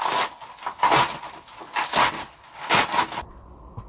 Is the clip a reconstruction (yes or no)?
no